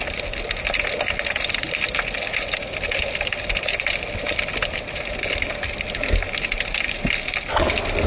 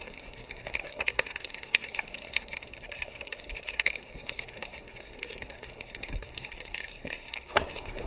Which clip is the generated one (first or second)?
second